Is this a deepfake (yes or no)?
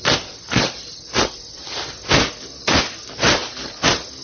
no